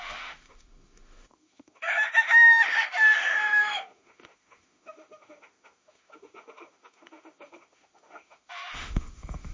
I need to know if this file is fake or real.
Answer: fake